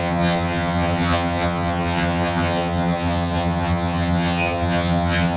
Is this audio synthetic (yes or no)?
yes